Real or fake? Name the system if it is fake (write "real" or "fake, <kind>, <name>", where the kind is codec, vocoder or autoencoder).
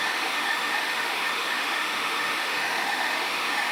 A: fake, autoencoder, DAC-VAE